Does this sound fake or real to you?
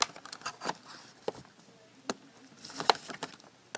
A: real